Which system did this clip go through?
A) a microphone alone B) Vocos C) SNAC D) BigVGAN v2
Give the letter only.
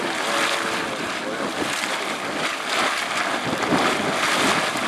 A